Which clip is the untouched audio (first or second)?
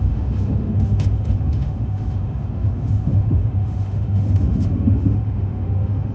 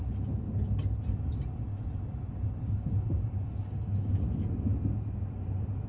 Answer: second